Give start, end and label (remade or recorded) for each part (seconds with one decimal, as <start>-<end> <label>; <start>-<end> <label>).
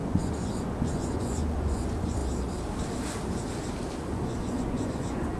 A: 0.0-2.2 remade; 2.2-4.0 recorded; 4.0-5.4 remade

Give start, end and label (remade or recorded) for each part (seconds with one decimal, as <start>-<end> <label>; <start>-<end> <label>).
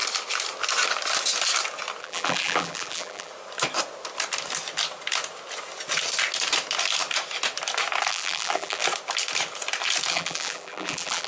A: 0.0-2.0 recorded; 2.0-3.3 remade; 3.3-8.1 recorded; 8.1-8.8 remade; 8.8-10.1 recorded; 10.1-11.3 remade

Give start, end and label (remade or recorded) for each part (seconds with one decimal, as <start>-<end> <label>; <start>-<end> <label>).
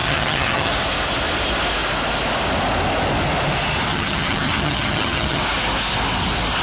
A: 0.0-0.7 remade; 0.7-3.9 recorded; 3.9-5.4 remade; 5.4-6.6 recorded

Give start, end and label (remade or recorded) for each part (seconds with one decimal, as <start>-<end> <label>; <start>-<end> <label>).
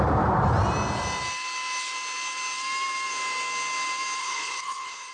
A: 0.0-4.2 recorded; 4.2-5.1 remade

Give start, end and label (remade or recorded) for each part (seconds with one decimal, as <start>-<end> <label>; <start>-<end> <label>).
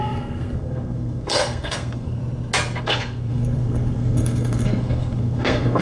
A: 0.0-2.2 remade; 2.2-2.8 recorded; 2.8-5.8 remade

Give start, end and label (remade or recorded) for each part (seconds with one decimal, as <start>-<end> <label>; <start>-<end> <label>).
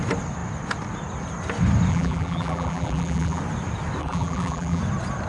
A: 0.0-1.9 recorded; 1.9-3.4 remade; 3.4-4.0 recorded; 4.0-4.8 remade; 4.8-5.3 recorded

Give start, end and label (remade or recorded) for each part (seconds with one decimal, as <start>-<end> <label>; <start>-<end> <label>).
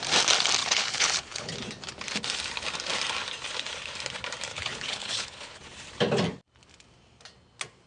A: 0.0-0.6 recorded; 0.6-1.5 remade; 1.5-4.5 recorded; 4.5-5.6 remade; 5.6-7.9 recorded